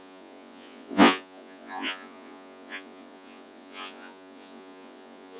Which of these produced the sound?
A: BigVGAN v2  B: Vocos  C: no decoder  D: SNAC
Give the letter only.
B